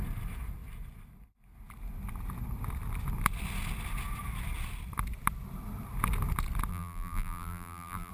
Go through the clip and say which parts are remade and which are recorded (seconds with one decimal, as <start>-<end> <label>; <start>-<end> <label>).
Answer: 0.0-6.7 recorded; 6.7-8.1 remade